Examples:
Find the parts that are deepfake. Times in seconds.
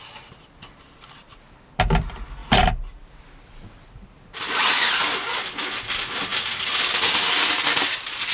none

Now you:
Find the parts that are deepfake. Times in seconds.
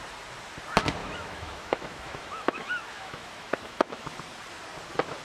1.0-4.1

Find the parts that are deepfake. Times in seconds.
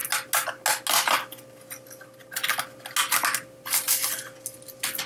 none